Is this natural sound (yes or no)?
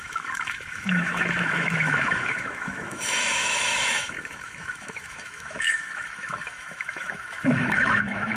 no